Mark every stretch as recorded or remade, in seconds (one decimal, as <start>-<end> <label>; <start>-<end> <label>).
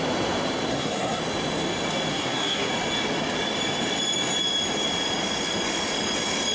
0.0-0.7 recorded; 0.7-1.2 remade; 1.2-2.1 recorded; 2.1-2.7 remade; 2.7-6.5 recorded